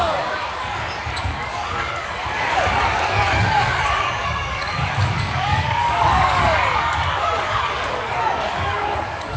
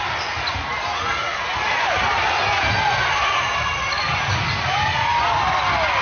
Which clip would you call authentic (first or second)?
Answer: second